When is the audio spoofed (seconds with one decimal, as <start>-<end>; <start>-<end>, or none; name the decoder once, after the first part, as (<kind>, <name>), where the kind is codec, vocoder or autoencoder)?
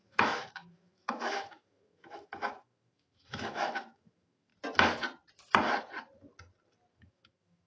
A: 0.0-4.5 (autoencoder, DAC-VAE); 6.9-7.7